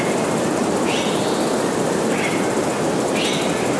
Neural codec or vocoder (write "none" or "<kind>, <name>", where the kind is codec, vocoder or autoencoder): none